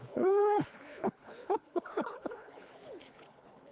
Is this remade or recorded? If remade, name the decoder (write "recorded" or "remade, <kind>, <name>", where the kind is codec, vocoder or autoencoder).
remade, codec, HILCodec